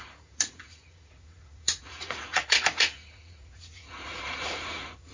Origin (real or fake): fake